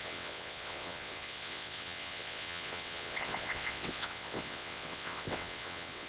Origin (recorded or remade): remade